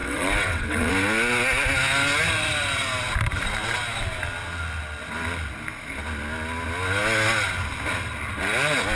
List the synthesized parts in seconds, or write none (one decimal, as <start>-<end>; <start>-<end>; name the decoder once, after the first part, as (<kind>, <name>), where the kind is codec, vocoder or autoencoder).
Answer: 0.0-0.9 (vocoder, WaveNeXt)